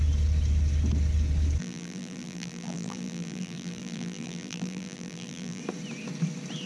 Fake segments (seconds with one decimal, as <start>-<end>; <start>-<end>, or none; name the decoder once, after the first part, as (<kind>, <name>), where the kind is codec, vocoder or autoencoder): 1.6-5.6 (vocoder, BigVGAN v2)